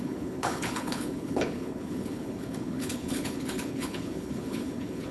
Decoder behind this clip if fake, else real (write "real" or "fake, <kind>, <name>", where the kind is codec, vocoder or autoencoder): fake, codec, HILCodec